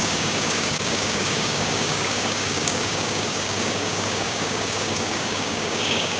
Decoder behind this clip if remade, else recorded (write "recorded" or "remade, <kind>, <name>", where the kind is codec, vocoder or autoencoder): remade, codec, DAC